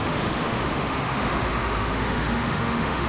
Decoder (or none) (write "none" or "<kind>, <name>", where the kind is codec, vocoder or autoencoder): autoencoder, DAC-VAE